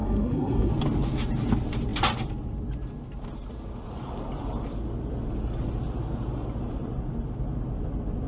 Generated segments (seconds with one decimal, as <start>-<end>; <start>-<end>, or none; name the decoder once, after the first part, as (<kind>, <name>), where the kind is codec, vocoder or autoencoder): 0.0-0.7 (codec, SNAC)